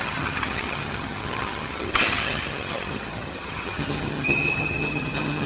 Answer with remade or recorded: remade